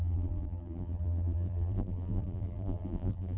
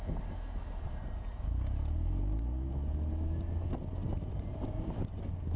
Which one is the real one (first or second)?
second